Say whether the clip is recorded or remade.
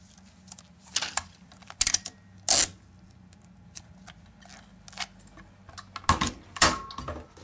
recorded